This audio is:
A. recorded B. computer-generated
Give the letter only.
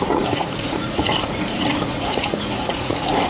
B